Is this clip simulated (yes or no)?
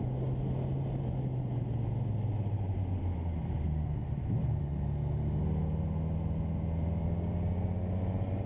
no